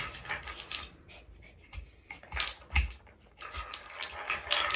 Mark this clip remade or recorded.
recorded